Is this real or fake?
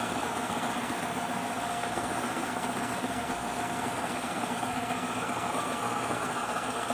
fake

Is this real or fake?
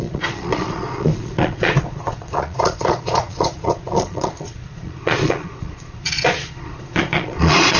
fake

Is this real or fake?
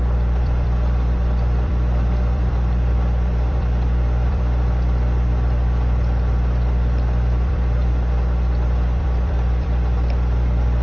fake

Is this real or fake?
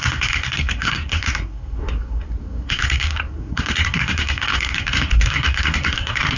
fake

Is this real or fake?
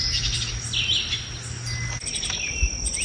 real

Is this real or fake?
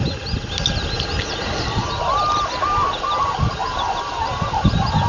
real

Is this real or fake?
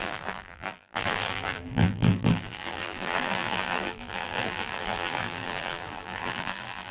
fake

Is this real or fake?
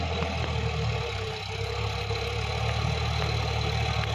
real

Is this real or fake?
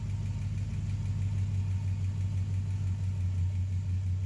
real